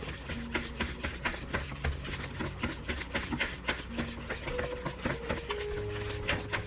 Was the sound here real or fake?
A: real